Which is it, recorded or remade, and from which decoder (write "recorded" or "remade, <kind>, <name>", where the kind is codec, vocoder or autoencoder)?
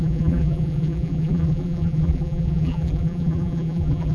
remade, vocoder, BigVGAN v2